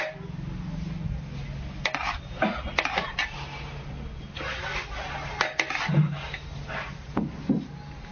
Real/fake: real